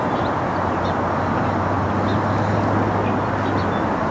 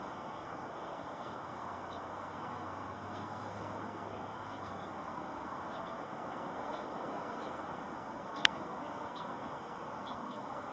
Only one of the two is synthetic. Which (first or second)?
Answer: second